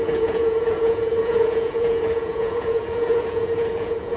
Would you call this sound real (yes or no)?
no